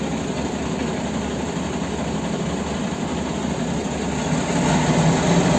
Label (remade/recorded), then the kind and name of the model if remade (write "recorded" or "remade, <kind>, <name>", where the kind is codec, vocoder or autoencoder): recorded